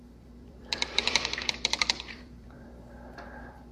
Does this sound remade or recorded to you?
remade